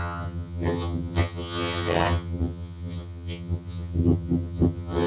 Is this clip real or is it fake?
fake